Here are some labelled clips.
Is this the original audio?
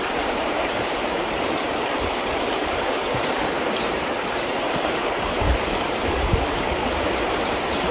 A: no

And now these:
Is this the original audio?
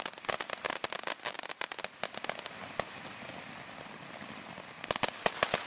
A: yes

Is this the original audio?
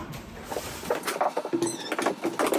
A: yes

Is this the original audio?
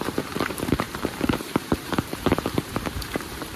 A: no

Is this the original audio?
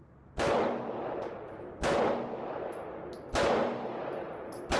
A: yes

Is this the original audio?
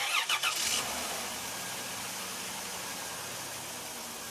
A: yes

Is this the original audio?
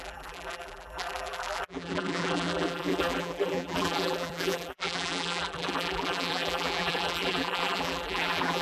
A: no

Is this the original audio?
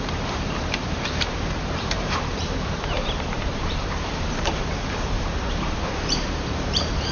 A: no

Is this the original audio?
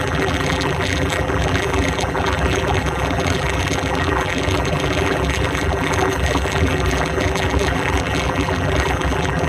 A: no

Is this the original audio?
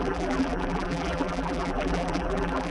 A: no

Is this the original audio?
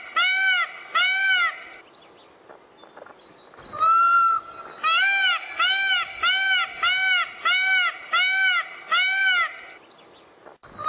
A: yes